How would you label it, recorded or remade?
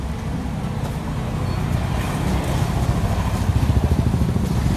recorded